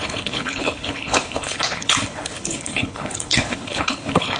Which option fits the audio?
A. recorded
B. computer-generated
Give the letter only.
B